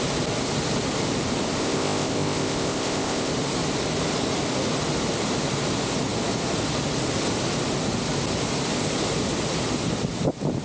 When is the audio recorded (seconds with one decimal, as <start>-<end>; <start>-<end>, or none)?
0.0-1.6; 3.3-10.6